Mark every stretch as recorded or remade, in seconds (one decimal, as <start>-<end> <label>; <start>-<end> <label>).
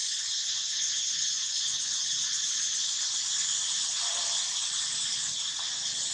0.0-2.0 remade; 2.0-6.1 recorded